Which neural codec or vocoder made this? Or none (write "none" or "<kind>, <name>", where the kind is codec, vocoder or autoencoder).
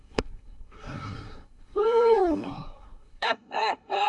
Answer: codec, SNAC